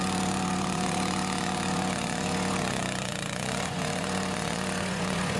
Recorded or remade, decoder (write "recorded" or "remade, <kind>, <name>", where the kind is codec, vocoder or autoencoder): remade, vocoder, Vocos